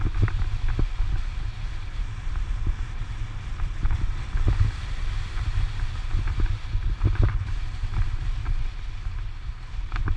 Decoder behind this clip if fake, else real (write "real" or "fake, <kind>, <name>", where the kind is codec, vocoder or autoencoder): fake, vocoder, BigVGAN v2